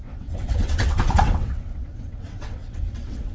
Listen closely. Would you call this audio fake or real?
fake